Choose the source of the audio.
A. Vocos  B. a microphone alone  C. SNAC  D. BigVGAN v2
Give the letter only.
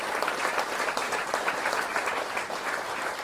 D